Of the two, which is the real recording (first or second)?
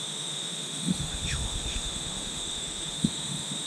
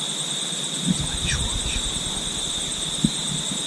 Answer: second